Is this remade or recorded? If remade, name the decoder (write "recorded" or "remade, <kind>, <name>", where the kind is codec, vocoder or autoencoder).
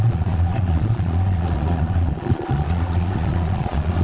remade, vocoder, Vocos